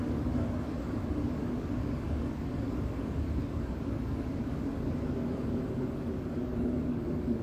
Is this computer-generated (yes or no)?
yes